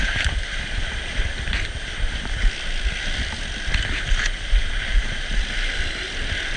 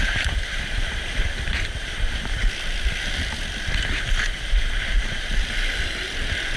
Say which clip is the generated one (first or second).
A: second